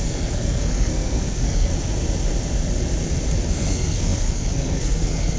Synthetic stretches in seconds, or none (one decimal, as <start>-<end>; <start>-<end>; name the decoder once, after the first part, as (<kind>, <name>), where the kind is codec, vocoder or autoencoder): 0.0-1.7 (codec, SNAC); 3.5-5.4